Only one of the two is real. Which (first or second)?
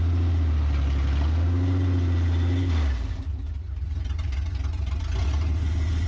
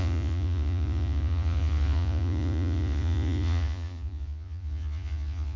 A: first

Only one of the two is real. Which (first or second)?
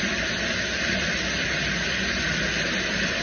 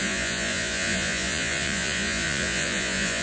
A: first